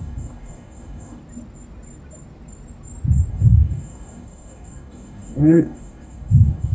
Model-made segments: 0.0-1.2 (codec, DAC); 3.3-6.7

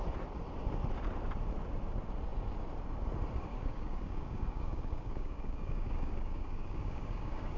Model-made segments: 3.5-7.6 (codec, DAC)